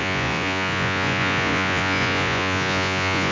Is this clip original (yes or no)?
no